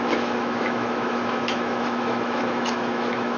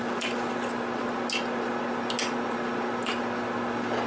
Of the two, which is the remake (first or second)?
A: first